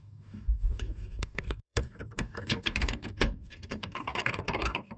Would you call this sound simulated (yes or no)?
yes